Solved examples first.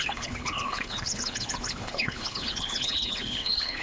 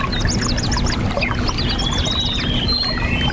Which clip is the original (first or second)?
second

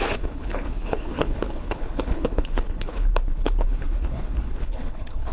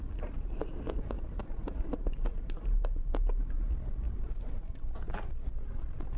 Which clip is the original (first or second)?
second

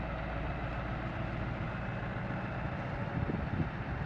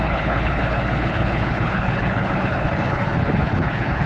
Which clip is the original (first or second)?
first